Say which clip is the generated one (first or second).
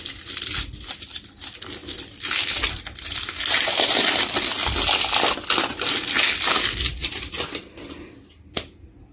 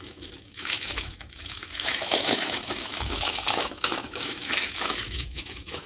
second